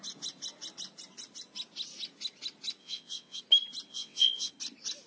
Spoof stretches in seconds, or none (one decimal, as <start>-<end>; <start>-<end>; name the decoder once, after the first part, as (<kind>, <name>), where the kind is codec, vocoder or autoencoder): 2.8-3.4 (vocoder, WaveNeXt); 3.9-4.5

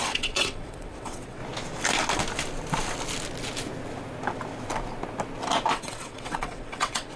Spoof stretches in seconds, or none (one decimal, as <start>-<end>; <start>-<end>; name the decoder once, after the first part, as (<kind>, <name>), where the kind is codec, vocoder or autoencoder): 0.0-1.4 (vocoder, WaveNeXt); 5.7-7.2

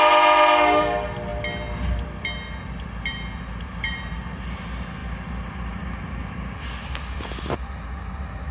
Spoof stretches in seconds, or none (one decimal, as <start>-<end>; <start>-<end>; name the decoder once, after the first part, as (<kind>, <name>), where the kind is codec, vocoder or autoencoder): none

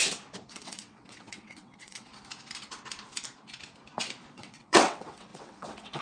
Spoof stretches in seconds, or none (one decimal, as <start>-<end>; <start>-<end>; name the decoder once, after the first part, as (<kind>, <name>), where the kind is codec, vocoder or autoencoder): 0.5-2.1 (vocoder, WaveNeXt); 4.3-6.0

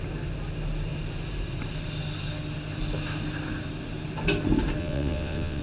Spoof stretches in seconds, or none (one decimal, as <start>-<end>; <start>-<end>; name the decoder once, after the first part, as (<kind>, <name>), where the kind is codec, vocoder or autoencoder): 4.8-5.6 (vocoder, WaveNeXt)